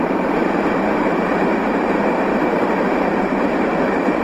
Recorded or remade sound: remade